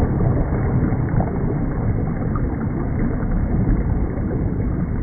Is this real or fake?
real